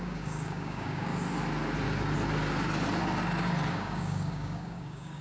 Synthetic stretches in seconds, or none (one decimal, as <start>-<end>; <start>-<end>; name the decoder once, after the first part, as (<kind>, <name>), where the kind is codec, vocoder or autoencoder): 0.0-1.1 (codec, DAC); 3.7-5.2